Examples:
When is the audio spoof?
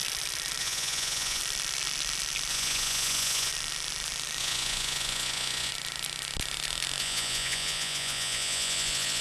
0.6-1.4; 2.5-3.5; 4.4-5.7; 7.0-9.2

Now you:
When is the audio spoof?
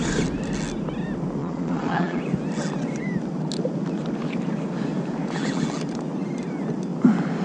1.4-2.2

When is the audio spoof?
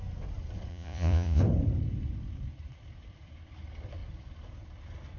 0.7-1.4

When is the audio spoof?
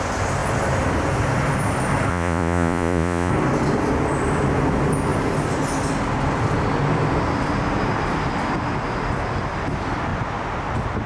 2.1-3.3